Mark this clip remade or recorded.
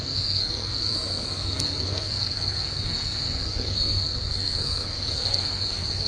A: remade